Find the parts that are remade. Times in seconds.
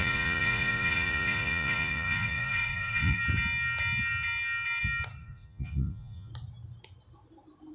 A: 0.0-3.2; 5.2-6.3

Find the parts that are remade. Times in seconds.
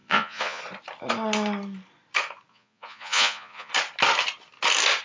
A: 0.0-0.6; 2.5-3.7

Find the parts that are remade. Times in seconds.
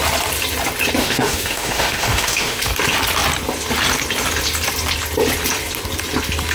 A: 1.0-2.6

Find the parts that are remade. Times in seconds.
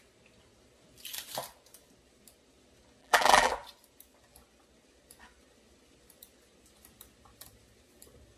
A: 3.0-3.5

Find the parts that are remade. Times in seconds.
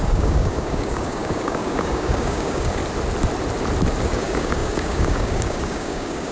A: 0.0-2.8; 4.0-6.3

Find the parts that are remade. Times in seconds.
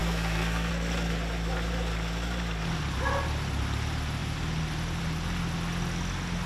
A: 0.0-0.7